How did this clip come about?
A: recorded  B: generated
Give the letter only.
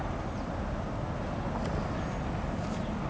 A